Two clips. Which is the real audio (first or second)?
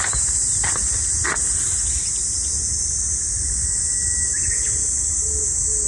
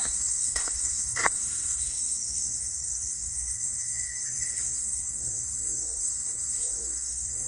first